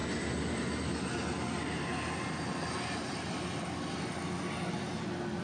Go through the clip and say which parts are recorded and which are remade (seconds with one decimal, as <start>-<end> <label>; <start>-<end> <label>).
0.0-5.4 recorded